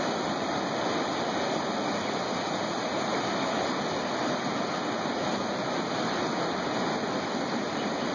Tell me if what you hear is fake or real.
real